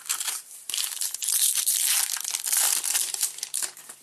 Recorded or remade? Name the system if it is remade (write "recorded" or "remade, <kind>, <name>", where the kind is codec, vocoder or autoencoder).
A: remade, vocoder, BigVGAN v2